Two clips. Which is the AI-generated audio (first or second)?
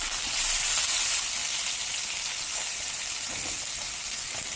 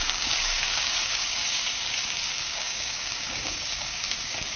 second